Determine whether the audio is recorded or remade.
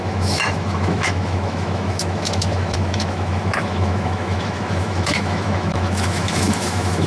remade